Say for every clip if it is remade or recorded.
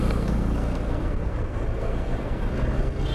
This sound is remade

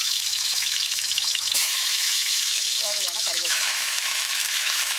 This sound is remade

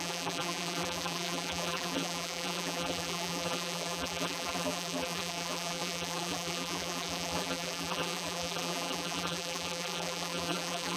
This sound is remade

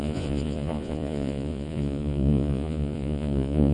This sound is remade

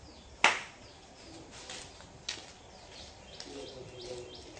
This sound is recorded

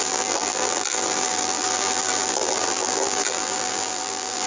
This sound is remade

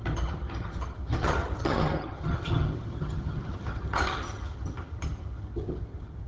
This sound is remade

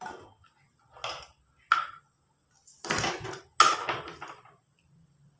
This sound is recorded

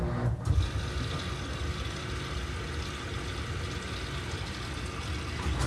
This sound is recorded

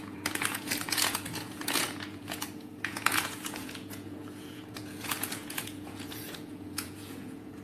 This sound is remade